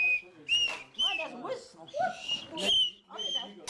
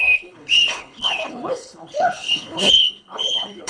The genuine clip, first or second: first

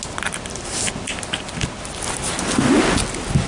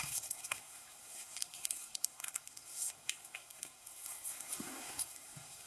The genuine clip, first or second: first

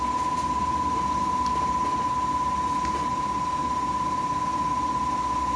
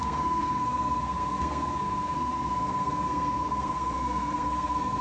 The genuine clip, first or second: first